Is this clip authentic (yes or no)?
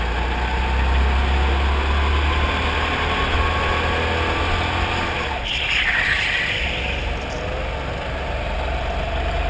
yes